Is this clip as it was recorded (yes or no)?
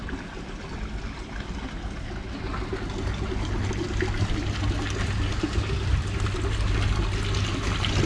yes